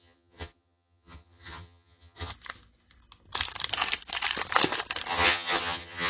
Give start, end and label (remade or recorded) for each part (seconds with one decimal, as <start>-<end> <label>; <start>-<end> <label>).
0.0-2.3 remade; 2.3-5.1 recorded; 5.1-6.1 remade